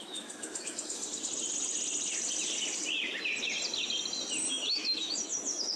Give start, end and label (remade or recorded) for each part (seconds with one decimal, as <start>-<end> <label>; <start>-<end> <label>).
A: 0.0-1.0 remade; 1.0-4.5 recorded; 4.5-5.8 remade